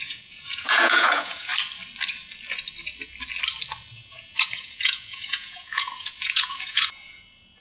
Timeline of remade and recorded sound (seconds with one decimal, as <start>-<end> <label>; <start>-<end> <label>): 0.0-1.5 remade; 1.5-3.9 recorded; 3.9-7.6 remade